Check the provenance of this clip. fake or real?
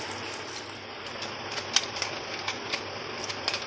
real